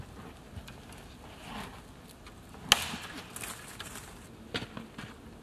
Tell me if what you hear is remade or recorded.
recorded